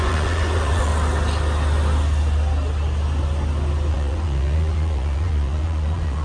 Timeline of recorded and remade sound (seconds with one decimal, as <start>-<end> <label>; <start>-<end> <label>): 0.0-0.9 remade; 0.9-3.9 recorded; 3.9-6.2 remade